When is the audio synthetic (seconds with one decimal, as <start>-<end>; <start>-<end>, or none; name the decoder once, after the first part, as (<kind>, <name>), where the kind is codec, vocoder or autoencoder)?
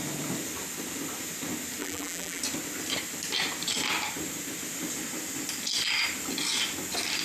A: 1.8-2.4 (vocoder, BigVGAN v2)